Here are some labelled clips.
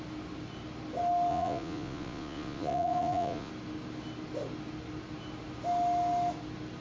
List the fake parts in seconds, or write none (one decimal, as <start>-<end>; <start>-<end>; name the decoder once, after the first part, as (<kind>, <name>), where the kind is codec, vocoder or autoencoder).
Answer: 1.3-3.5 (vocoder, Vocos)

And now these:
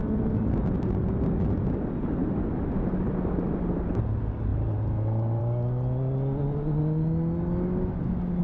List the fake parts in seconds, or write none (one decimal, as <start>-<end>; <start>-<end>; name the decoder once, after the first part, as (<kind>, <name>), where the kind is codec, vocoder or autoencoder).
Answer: 2.2-4.0 (vocoder, BigVGAN v2)

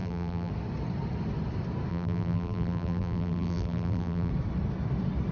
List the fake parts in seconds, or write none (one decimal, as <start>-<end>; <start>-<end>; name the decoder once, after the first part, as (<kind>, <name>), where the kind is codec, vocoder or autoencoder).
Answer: 0.0-0.5 (vocoder, BigVGAN v2); 1.9-4.3